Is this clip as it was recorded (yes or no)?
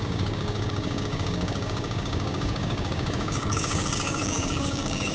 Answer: no